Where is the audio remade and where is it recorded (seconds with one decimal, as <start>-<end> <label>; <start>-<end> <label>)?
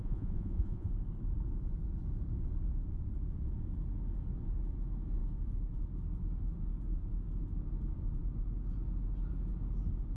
0.0-0.9 remade; 0.9-10.2 recorded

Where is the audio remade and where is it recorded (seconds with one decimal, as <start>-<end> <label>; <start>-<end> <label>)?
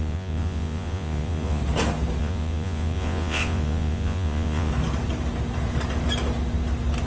0.0-1.6 remade; 1.6-2.2 recorded; 2.2-4.7 remade; 4.7-7.1 recorded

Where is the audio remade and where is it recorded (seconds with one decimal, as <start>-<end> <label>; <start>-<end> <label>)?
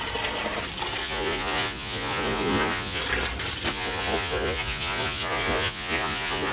0.0-1.0 recorded; 1.0-3.0 remade; 3.0-3.7 recorded; 3.7-6.5 remade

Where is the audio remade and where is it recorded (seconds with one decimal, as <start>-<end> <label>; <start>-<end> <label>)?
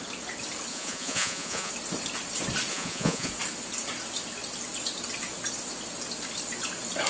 0.0-0.7 recorded; 0.7-1.7 remade; 1.7-2.7 recorded; 2.7-3.3 remade; 3.3-7.1 recorded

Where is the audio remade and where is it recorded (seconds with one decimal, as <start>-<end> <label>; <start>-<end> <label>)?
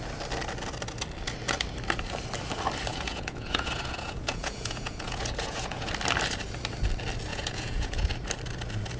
0.0-2.9 recorded; 2.9-5.9 remade; 5.9-7.3 recorded; 7.3-8.1 remade; 8.1-9.0 recorded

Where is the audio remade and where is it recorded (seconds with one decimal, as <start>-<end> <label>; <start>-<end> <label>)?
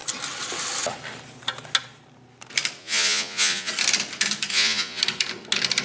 0.0-2.8 recorded; 2.8-3.7 remade; 3.7-4.5 recorded; 4.5-5.0 remade; 5.0-5.8 recorded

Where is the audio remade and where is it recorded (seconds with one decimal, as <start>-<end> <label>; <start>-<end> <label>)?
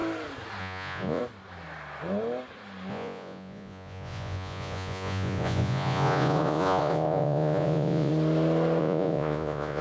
0.0-0.6 recorded; 0.6-1.2 remade; 1.2-2.9 recorded; 2.9-8.1 remade; 8.1-8.8 recorded; 8.8-9.8 remade